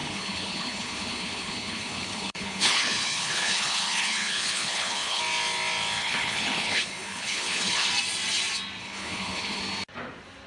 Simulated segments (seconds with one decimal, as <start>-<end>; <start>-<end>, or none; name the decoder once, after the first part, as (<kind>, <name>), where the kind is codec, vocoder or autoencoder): 0.0-5.2 (codec, HILCodec); 6.0-7.9; 8.8-9.6